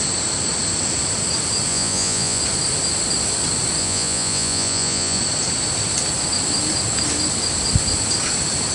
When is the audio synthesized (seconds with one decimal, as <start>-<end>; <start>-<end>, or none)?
1.7-2.4; 3.8-5.2